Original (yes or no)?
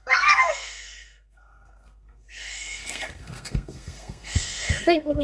no